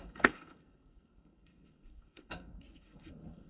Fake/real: fake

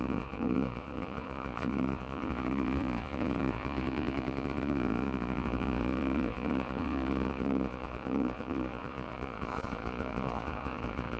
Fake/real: fake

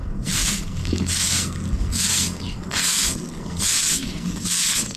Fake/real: fake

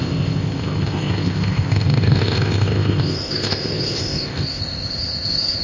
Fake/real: fake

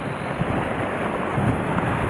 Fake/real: real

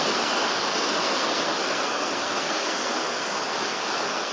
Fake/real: fake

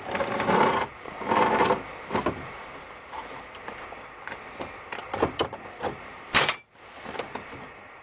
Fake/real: real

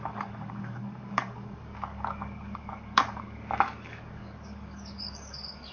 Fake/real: fake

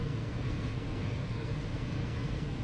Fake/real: fake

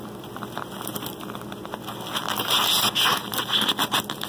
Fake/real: real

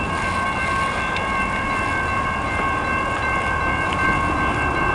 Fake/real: real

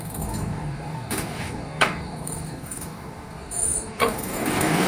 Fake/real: fake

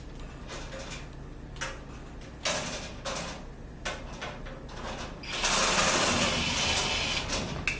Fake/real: real